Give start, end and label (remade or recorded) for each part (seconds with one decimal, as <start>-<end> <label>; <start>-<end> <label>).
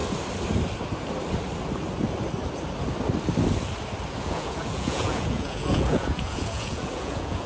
0.0-4.2 recorded; 4.2-7.5 remade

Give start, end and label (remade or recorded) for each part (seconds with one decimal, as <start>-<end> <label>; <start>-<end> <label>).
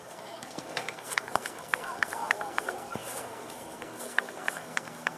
0.0-5.2 remade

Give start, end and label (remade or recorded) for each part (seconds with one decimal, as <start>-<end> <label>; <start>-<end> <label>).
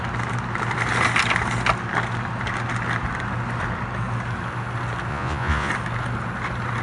0.0-5.1 recorded; 5.1-5.7 remade; 5.7-6.8 recorded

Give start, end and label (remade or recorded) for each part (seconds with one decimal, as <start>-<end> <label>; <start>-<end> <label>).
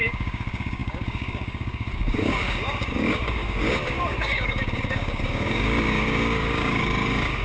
0.0-7.4 remade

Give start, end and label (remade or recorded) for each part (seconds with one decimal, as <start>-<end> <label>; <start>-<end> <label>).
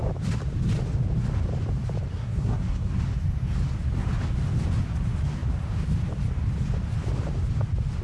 0.0-2.1 recorded; 2.1-2.9 remade; 2.9-8.0 recorded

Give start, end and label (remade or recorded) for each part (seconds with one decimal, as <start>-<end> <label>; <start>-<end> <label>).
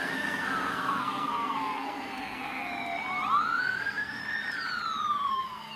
0.0-2.7 remade; 2.7-3.6 recorded; 3.6-4.2 remade; 4.2-5.3 recorded; 5.3-5.8 remade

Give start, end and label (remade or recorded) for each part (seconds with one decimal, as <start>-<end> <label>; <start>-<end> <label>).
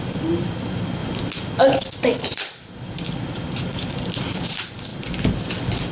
0.0-1.0 remade; 1.0-1.6 recorded; 1.6-5.9 remade